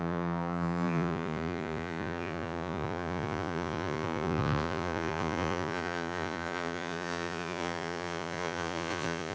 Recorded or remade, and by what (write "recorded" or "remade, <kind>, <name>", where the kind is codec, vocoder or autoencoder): remade, vocoder, Vocos